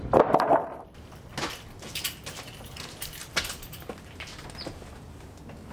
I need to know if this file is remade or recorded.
recorded